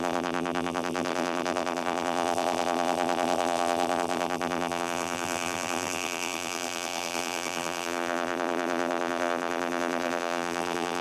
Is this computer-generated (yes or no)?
yes